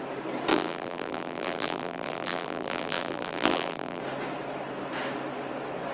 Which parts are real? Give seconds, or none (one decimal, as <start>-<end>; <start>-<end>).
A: 0.0-0.5; 4.0-5.9